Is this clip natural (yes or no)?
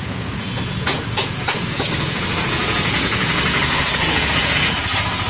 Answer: no